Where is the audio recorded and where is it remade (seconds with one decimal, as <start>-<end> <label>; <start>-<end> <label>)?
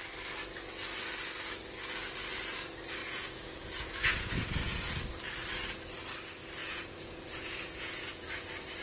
0.0-3.0 recorded; 3.0-5.0 remade; 5.0-6.6 recorded; 6.6-8.3 remade; 8.3-8.8 recorded